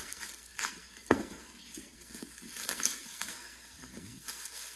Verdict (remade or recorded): remade